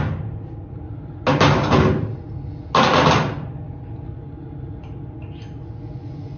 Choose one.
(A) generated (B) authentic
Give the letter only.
B